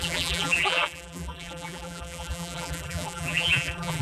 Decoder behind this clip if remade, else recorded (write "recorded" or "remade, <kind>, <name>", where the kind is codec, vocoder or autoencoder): remade, vocoder, BigVGAN v2